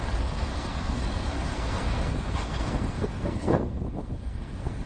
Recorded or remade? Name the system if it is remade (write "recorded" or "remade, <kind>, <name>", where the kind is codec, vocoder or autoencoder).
remade, codec, SNAC